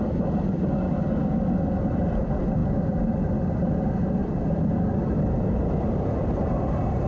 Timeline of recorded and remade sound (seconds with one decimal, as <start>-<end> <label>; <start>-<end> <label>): 0.0-7.1 recorded